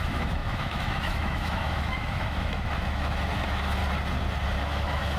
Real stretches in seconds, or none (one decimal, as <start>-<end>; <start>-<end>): 3.8-4.6